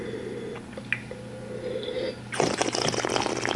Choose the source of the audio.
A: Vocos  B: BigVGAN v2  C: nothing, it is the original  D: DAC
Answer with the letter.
C